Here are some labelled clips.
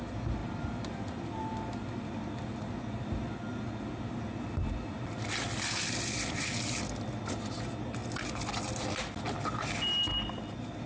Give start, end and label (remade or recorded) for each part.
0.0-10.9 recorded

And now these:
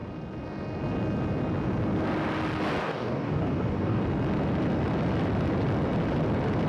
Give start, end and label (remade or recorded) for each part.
0.0-2.8 recorded; 2.8-4.0 remade; 4.0-6.7 recorded

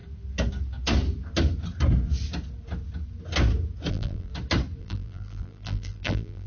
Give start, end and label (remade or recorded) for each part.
0.0-3.9 recorded; 3.9-4.3 remade; 4.3-4.8 recorded; 4.8-6.5 remade

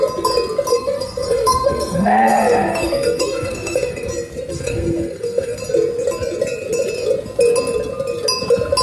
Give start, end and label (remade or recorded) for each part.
0.0-0.7 recorded; 0.7-4.1 remade; 4.1-4.5 recorded; 4.5-5.6 remade; 5.6-8.8 recorded

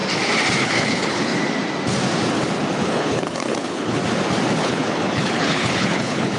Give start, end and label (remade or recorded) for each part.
0.0-0.6 recorded; 0.6-1.3 remade; 1.3-2.7 recorded; 2.7-4.0 remade; 4.0-4.6 recorded; 4.6-6.4 remade

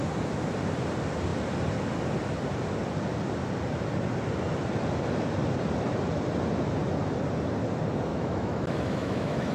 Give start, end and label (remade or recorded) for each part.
0.0-8.1 recorded; 8.1-9.5 remade